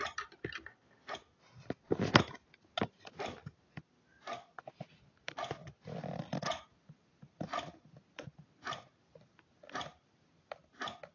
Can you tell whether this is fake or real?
real